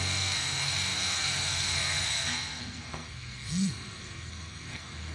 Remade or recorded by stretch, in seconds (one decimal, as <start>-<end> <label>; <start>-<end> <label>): 0.0-5.1 remade